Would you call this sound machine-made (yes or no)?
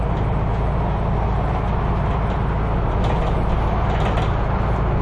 no